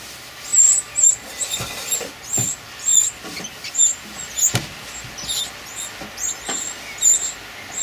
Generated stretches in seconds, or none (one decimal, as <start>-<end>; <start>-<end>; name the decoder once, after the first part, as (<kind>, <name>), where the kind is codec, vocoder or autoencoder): none